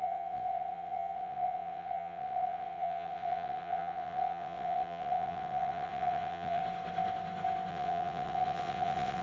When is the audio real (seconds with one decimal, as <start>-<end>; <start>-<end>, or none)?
6.6-7.7

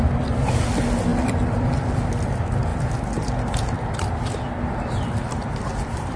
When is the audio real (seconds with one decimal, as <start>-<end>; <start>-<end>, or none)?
0.0-6.2